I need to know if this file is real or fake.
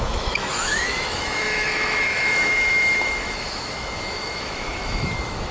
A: fake